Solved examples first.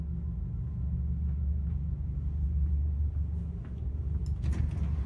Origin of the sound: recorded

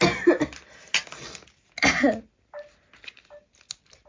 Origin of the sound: recorded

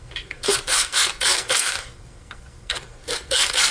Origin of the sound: remade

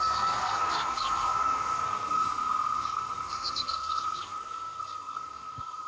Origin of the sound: remade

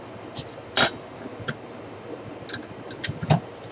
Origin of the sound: recorded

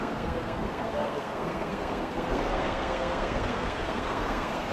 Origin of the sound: remade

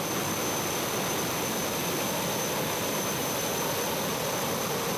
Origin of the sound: recorded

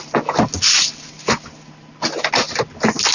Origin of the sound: recorded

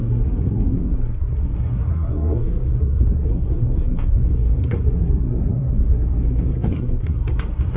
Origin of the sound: remade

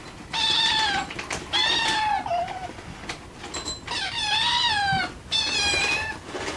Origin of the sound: recorded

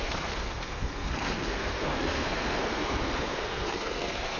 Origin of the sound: remade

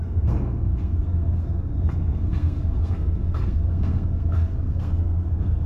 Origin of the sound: remade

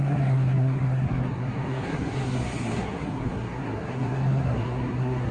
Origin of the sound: remade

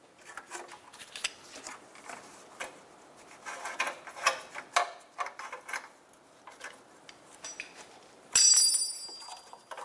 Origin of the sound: recorded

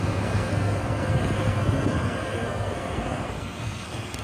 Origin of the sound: remade